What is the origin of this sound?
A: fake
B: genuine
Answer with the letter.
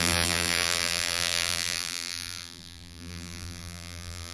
A